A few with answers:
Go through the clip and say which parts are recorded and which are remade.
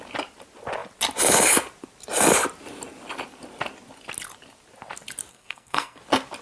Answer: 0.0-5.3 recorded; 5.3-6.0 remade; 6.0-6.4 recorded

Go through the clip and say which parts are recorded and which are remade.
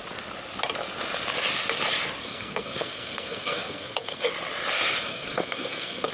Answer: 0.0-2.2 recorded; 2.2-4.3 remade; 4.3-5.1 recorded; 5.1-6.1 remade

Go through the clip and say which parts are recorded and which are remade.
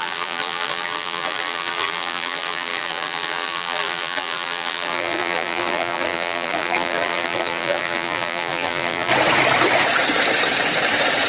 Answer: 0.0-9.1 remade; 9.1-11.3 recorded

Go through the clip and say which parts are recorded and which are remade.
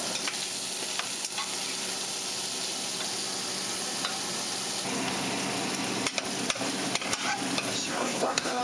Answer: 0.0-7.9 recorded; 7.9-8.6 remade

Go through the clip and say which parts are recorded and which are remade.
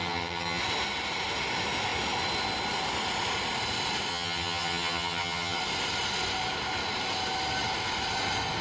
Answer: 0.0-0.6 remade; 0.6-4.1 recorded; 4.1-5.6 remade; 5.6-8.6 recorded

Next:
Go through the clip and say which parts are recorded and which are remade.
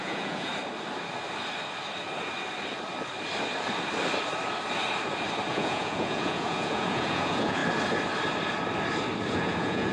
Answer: 0.0-0.5 remade; 0.5-5.5 recorded; 5.5-7.6 remade; 7.6-9.3 recorded; 9.3-9.9 remade